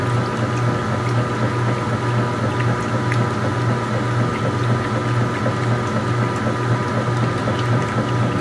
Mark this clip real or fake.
real